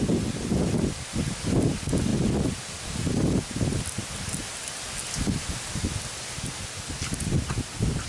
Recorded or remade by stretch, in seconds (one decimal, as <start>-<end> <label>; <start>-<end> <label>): 0.0-8.1 recorded

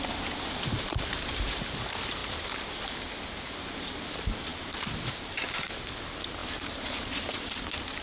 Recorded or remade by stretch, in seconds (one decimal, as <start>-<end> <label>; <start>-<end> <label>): 0.0-8.0 remade

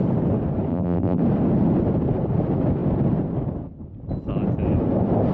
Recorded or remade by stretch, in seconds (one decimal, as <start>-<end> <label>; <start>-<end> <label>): 0.0-0.7 recorded; 0.7-1.2 remade; 1.2-5.3 recorded

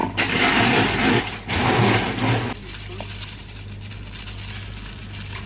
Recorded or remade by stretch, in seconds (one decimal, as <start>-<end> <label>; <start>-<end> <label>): 0.0-1.2 remade; 1.2-2.6 recorded; 2.6-3.9 remade; 3.9-5.5 recorded

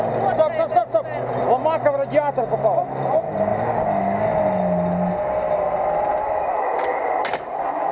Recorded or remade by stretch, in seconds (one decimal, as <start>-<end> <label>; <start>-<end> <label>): 0.0-7.9 recorded

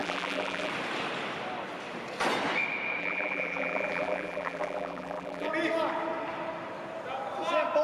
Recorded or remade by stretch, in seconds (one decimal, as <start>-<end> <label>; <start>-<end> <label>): 0.0-0.7 remade; 0.7-3.0 recorded; 3.0-5.5 remade; 5.5-7.8 recorded

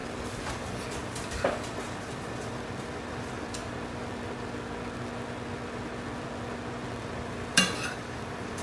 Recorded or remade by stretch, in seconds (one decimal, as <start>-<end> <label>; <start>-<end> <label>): 0.0-0.5 recorded; 0.5-1.0 remade; 1.0-2.0 recorded; 2.0-3.6 remade; 3.6-7.0 recorded; 7.0-8.6 remade

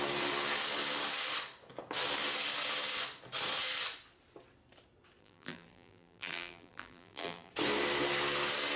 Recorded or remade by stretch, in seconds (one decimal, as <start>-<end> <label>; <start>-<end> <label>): 0.0-5.2 recorded; 5.2-7.5 remade; 7.5-8.8 recorded